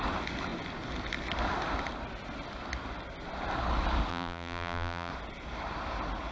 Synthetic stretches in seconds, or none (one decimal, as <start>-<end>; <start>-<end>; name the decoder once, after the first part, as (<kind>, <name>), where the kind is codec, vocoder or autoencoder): 4.1-5.1 (vocoder, BigVGAN v2)